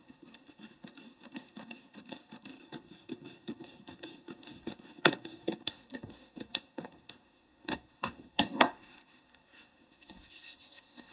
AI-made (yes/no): yes